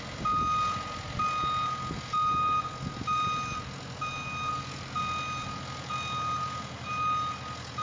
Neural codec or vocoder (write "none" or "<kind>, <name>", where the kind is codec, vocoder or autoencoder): none